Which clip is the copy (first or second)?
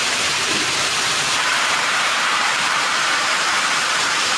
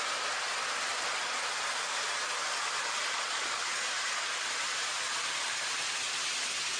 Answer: first